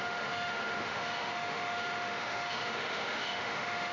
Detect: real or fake fake